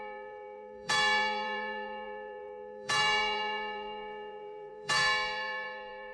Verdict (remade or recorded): remade